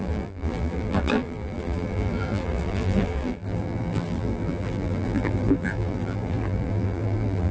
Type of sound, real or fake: fake